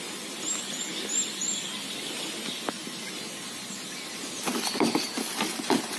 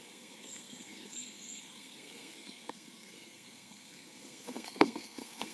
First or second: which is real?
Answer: first